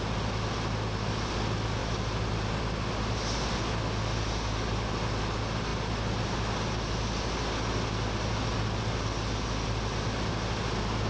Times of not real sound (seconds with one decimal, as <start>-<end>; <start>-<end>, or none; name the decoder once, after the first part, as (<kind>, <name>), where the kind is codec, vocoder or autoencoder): none